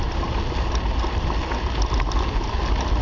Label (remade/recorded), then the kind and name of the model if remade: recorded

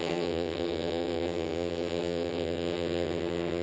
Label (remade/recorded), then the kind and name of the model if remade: remade, vocoder, HiFi-GAN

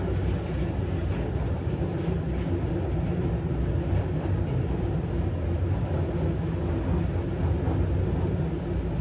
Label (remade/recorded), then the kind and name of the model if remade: recorded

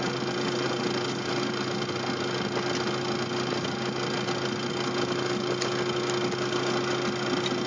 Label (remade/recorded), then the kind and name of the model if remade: recorded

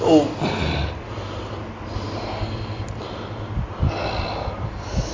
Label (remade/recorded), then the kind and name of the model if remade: recorded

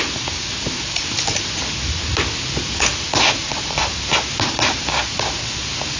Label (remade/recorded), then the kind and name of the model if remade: recorded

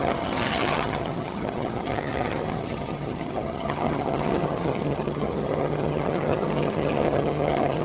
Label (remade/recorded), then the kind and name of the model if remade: remade, vocoder, HiFi-GAN